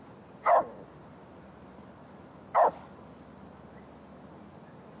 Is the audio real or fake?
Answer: real